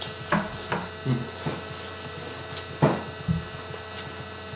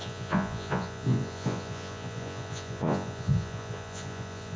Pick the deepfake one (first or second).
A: second